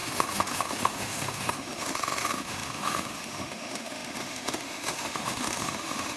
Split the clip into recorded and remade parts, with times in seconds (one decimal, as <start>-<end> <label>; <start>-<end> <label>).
0.0-6.2 remade